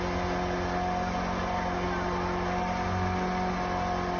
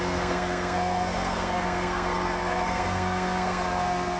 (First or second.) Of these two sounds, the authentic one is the first